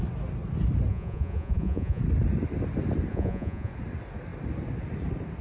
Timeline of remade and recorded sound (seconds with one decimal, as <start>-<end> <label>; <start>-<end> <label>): 0.0-0.9 recorded; 0.9-2.0 remade; 2.0-3.1 recorded; 3.1-3.7 remade; 3.7-5.4 recorded